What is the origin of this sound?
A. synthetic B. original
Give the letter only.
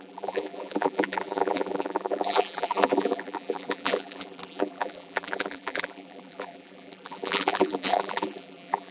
A